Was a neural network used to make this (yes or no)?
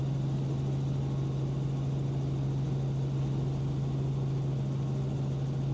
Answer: no